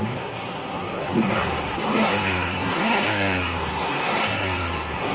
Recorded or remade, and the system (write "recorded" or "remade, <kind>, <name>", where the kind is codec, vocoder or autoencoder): remade, codec, SNAC